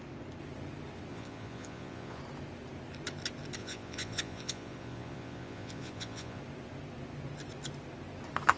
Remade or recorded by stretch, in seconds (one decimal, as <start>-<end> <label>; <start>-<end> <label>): 0.0-1.1 recorded; 1.1-2.2 remade; 2.2-3.6 recorded; 3.6-6.4 remade; 6.4-8.6 recorded